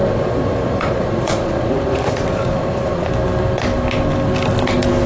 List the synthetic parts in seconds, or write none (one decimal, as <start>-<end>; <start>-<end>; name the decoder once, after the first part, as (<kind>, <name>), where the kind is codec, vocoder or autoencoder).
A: 0.0-3.1 (vocoder, Vocos)